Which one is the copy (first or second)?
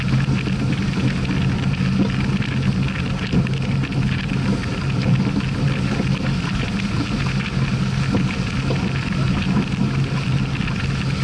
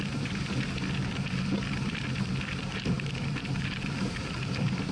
second